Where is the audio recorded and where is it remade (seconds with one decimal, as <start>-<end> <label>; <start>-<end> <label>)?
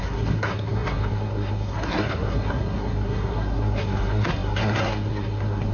0.0-5.7 remade